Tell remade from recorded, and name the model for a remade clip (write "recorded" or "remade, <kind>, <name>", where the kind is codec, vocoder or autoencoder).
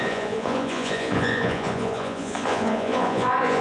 remade, vocoder, Vocos